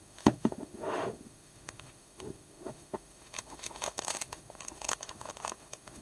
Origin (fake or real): fake